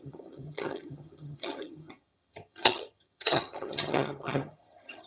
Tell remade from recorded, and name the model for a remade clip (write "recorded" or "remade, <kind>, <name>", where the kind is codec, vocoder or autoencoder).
remade, vocoder, HiFi-GAN